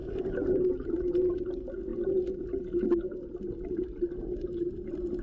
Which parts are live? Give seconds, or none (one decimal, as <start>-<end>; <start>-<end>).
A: 0.0-5.2